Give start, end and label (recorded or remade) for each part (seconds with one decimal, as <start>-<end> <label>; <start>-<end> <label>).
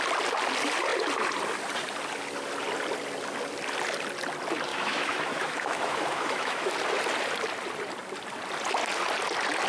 0.0-4.7 recorded; 4.7-6.7 remade; 6.7-9.7 recorded